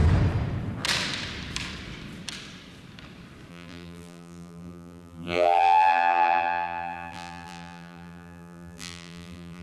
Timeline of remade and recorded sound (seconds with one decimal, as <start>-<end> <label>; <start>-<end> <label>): 0.0-3.5 recorded; 3.5-9.6 remade